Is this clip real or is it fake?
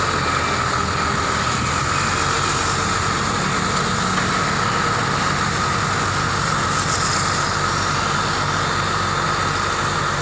real